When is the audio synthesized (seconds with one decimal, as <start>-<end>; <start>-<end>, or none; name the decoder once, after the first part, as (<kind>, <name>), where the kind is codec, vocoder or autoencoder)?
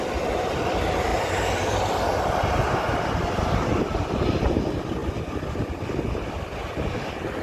none